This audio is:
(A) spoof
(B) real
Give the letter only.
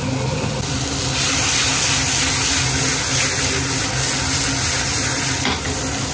B